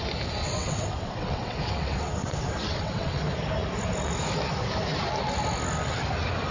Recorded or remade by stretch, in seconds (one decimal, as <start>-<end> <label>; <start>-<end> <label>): 0.0-0.4 recorded; 0.4-3.2 remade; 3.2-6.5 recorded